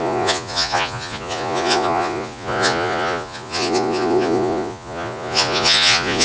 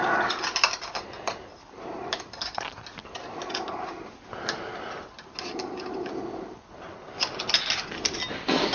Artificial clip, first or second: first